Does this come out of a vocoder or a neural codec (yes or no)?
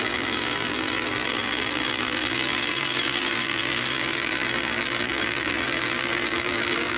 yes